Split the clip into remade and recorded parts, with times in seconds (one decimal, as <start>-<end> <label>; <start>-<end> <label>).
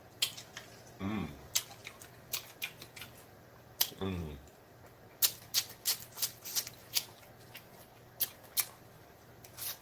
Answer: 0.0-9.8 recorded